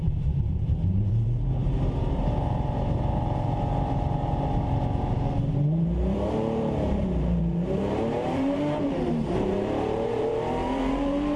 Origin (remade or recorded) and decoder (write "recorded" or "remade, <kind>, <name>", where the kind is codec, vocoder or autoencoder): remade, vocoder, BigVGAN v2